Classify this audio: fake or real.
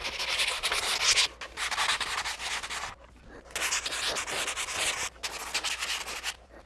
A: real